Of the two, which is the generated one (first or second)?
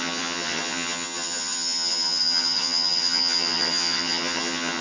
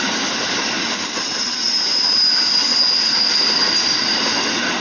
first